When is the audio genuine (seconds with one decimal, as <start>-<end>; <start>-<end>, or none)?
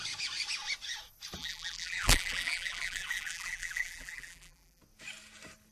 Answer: 0.0-1.4; 4.8-5.7